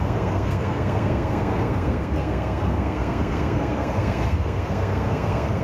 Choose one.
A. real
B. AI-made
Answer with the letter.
B